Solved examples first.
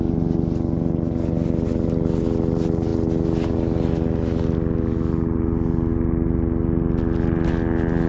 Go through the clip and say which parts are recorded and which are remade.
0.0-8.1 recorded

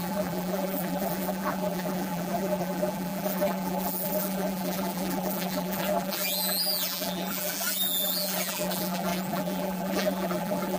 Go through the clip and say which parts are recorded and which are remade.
0.0-10.8 remade

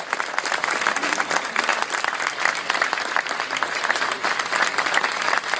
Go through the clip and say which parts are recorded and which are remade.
0.0-5.6 recorded